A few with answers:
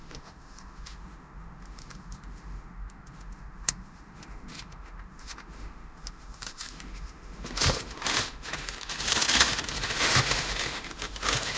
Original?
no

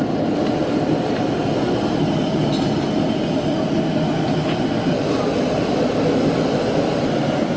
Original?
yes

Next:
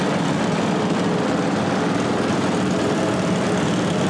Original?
no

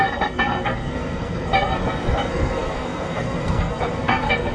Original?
no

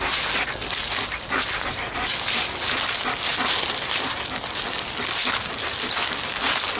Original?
yes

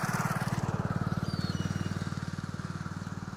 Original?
yes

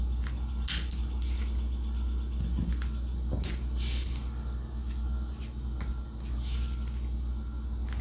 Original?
yes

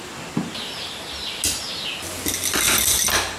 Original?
yes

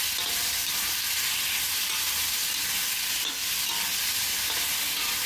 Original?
yes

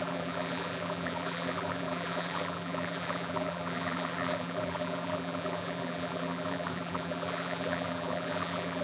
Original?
no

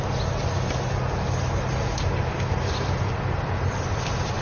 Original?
yes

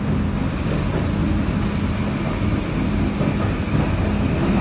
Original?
yes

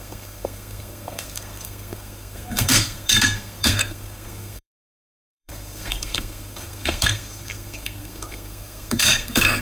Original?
no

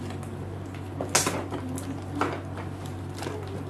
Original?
yes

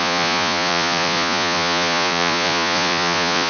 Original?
no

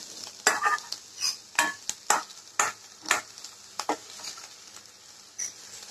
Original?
yes